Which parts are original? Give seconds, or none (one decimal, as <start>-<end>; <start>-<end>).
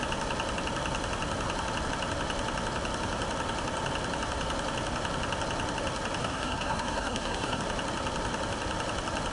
0.0-6.2; 7.6-9.3